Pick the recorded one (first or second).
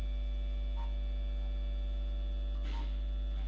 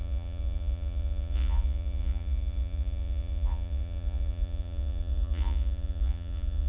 first